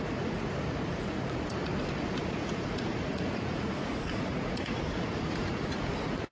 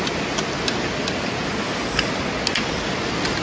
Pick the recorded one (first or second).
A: second